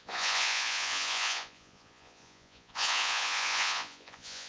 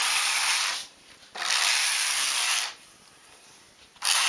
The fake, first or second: first